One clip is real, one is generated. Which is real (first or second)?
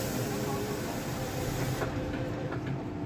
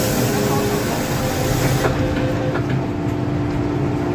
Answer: second